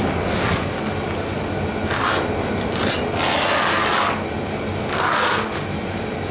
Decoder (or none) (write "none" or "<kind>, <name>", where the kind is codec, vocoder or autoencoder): none